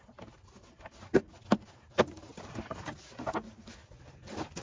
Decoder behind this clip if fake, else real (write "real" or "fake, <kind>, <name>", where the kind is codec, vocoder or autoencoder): real